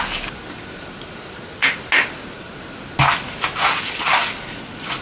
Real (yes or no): yes